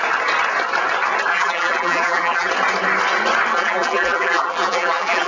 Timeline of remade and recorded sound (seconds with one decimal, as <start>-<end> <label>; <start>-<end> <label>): 0.0-1.3 recorded; 1.3-2.5 remade; 2.5-3.5 recorded; 3.5-5.3 remade